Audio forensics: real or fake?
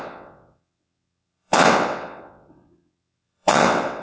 fake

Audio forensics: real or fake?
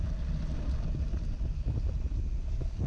real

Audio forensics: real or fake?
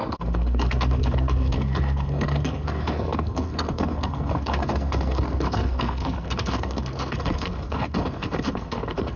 fake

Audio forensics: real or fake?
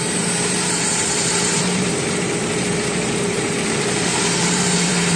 fake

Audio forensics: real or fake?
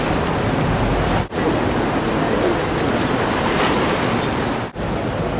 real